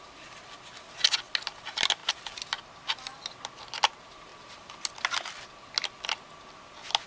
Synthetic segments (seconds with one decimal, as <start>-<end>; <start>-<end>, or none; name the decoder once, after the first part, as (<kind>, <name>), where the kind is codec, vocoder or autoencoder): none